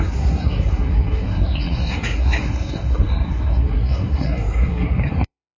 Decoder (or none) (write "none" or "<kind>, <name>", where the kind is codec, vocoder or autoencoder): codec, SNAC